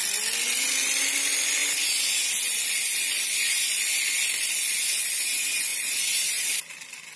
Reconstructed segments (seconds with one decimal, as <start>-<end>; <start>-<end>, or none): 5.7-6.6